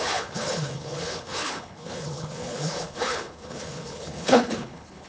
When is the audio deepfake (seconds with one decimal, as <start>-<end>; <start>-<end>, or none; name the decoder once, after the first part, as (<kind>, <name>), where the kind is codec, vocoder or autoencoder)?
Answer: 0.0-5.1 (codec, HILCodec)